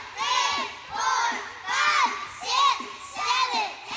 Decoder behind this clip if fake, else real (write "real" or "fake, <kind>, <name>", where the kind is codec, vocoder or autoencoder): real